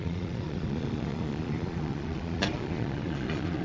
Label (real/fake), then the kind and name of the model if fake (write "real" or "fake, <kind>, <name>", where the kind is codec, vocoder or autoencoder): fake, vocoder, Vocos